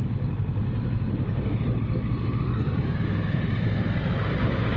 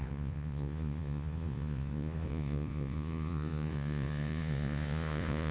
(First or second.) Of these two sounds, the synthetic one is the second